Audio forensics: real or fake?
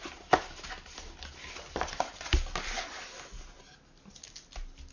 real